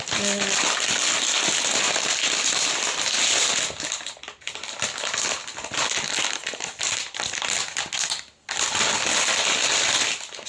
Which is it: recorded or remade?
recorded